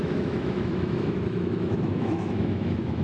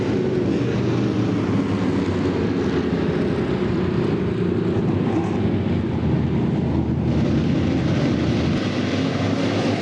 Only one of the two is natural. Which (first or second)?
second